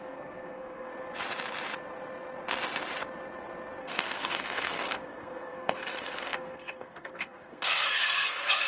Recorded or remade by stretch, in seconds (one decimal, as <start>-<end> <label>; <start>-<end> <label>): 0.0-0.9 remade; 0.9-3.8 recorded; 3.8-8.7 remade